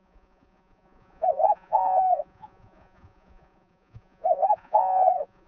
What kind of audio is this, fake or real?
fake